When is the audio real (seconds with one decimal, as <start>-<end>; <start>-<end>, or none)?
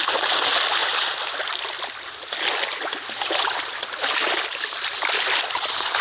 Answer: 0.0-6.0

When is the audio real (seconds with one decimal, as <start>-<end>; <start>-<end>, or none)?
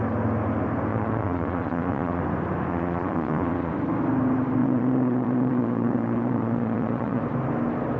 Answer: 0.0-0.9; 2.2-2.7; 3.7-4.6; 7.2-8.0